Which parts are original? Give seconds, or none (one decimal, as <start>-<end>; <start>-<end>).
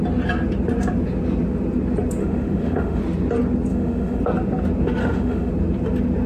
0.0-2.2; 3.0-3.7; 4.2-5.0; 5.5-6.3